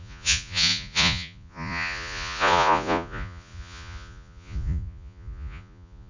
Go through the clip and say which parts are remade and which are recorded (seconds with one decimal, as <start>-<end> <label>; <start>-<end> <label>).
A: 0.0-6.1 remade